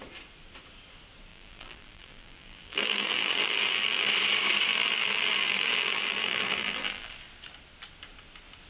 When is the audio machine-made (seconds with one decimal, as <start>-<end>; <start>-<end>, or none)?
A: 1.3-4.1; 4.7-7.1